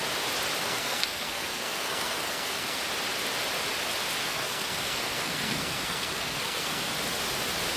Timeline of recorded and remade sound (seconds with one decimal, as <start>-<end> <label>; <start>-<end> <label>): 0.0-0.6 recorded; 0.6-2.8 remade; 2.8-4.2 recorded; 4.2-6.9 remade; 6.9-7.8 recorded